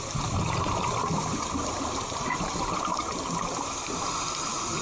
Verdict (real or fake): real